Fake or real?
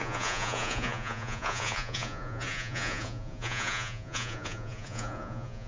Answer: fake